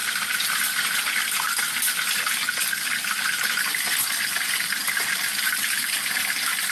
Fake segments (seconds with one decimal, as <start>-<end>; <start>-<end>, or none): none